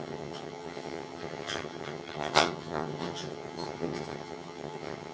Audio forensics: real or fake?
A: fake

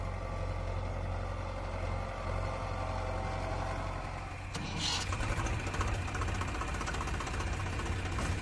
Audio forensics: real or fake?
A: real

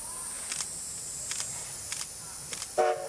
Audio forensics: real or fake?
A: real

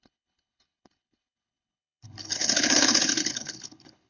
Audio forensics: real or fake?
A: fake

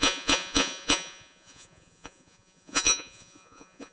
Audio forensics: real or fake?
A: fake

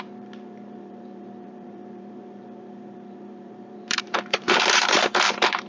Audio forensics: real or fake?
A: fake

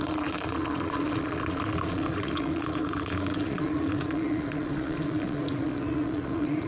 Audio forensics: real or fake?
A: fake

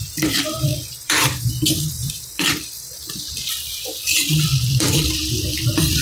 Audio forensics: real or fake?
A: fake